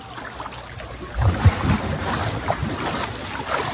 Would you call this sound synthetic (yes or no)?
no